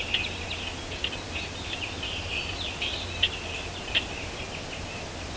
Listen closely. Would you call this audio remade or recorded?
recorded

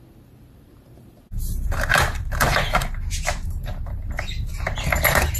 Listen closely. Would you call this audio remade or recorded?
remade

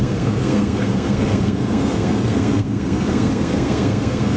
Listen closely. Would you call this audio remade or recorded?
remade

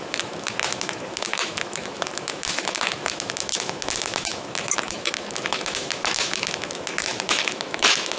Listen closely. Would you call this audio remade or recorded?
remade